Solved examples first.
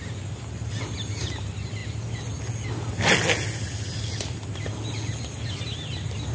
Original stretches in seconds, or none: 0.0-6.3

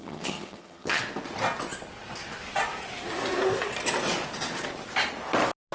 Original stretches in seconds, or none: 1.0-5.7